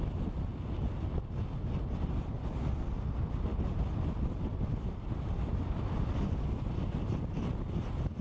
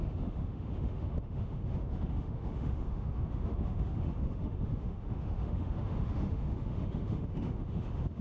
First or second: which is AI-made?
second